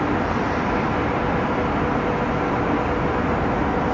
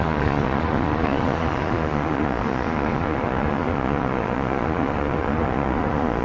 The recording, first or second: first